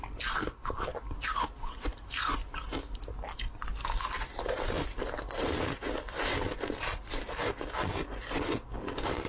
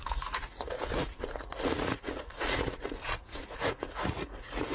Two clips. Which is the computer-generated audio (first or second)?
second